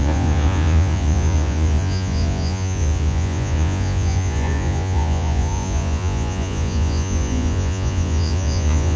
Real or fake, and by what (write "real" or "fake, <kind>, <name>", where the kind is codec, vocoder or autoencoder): fake, vocoder, Vocos